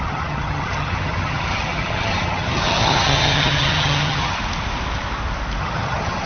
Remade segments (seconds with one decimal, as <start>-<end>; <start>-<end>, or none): 0.0-4.4; 5.6-6.3